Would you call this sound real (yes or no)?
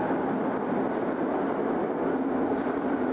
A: yes